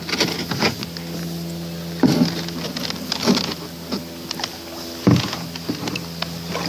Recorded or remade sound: recorded